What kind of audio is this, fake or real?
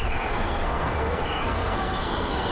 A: fake